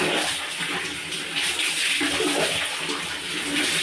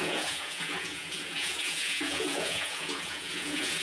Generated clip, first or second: second